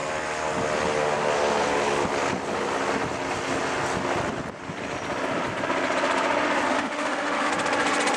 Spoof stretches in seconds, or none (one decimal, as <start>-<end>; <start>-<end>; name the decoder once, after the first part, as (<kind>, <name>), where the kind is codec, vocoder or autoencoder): 6.7-7.5 (autoencoder, DAC-VAE)